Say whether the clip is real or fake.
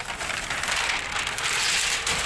real